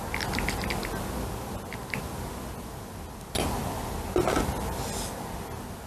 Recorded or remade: recorded